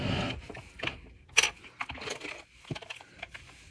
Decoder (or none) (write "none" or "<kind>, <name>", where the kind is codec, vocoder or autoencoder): none